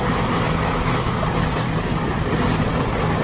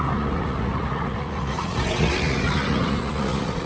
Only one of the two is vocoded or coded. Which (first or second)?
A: second